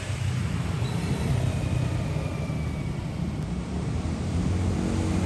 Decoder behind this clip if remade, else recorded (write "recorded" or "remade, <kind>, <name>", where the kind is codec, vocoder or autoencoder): recorded